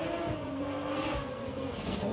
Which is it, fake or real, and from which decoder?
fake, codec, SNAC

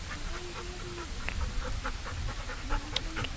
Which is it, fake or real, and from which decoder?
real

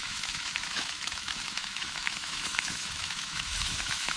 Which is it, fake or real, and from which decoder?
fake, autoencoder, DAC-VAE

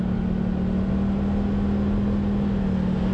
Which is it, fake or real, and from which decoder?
real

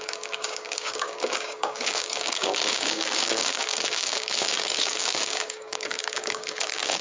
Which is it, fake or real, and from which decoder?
fake, codec, DAC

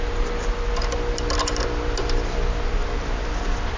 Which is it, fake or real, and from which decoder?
real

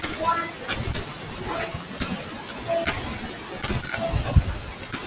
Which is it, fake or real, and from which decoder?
real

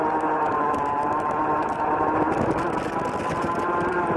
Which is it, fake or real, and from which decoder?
real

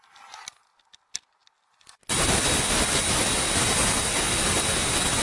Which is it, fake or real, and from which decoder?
real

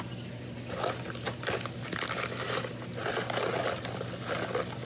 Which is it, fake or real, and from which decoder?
real